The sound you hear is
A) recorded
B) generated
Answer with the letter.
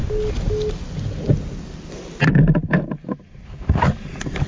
A